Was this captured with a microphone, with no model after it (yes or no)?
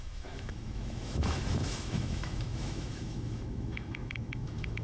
no